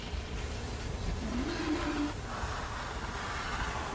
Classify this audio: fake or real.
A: real